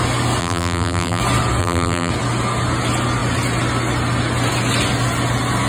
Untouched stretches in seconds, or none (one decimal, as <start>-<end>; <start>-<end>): 0.0-0.4; 1.2-1.6; 2.1-5.7